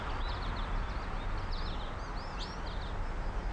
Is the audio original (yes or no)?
yes